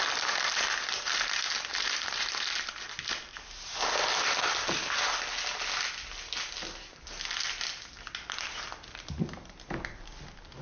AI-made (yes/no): no